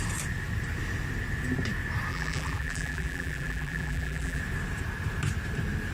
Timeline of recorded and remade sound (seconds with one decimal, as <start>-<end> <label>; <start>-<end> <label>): 0.0-2.1 recorded; 2.1-4.4 remade; 4.4-5.9 recorded